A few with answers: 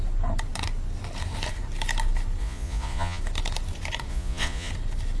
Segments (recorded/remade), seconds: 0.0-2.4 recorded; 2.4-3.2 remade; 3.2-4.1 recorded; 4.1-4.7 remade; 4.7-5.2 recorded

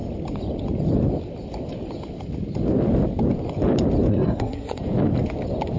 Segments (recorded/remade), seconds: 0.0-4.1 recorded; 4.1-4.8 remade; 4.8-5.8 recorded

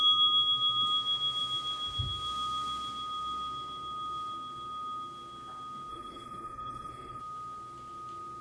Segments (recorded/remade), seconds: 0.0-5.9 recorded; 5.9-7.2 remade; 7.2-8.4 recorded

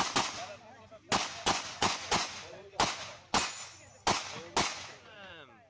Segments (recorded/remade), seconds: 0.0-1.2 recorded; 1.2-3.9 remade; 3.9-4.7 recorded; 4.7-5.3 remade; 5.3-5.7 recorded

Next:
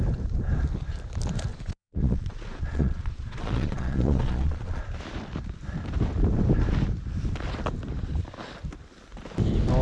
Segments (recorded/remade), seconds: 0.0-1.5 recorded; 1.5-4.8 remade; 4.8-9.8 recorded

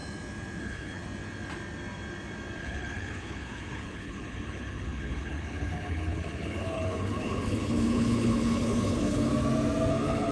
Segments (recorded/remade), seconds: 0.0-0.6 recorded; 0.6-1.0 remade; 1.0-2.6 recorded; 2.6-9.3 remade; 9.3-9.9 recorded; 9.9-10.3 remade

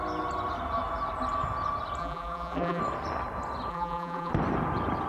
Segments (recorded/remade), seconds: 0.0-2.0 recorded; 2.0-2.8 remade; 2.8-3.7 recorded; 3.7-4.3 remade; 4.3-5.1 recorded

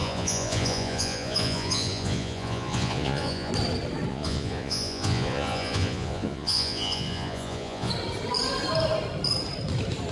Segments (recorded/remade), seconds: 0.0-3.5 remade; 3.5-4.1 recorded; 4.1-7.9 remade; 7.9-10.1 recorded